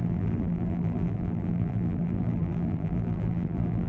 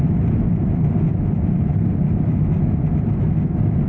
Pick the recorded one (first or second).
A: second